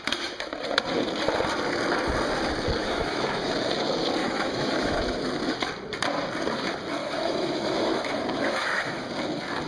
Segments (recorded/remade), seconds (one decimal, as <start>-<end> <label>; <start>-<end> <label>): 0.0-2.8 recorded; 2.8-3.5 remade; 3.5-4.2 recorded; 4.2-5.0 remade; 5.0-7.0 recorded; 7.0-9.1 remade; 9.1-9.7 recorded